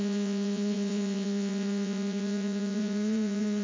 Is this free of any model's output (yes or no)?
no